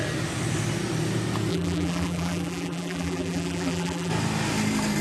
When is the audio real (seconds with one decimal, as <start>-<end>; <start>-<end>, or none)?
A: 0.0-1.5; 4.1-5.0